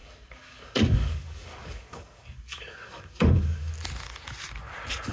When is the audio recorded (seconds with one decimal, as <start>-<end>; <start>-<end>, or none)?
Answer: 3.7-5.1